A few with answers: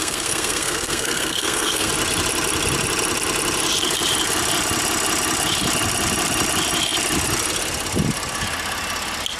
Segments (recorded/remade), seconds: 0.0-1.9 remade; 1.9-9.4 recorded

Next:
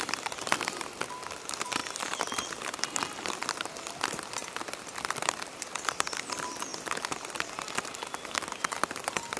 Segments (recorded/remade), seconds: 0.0-6.7 remade; 6.7-7.8 recorded; 7.8-9.4 remade

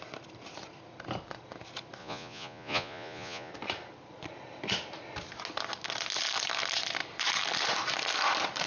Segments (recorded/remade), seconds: 0.0-2.0 recorded; 2.0-3.5 remade; 3.5-8.7 recorded

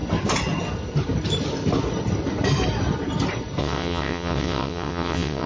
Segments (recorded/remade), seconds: 0.0-3.6 recorded; 3.6-5.5 remade

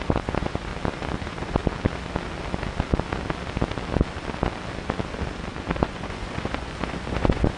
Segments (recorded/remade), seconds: 0.0-0.7 remade; 0.7-1.2 recorded; 1.2-1.6 remade; 1.6-5.7 recorded; 5.7-7.6 remade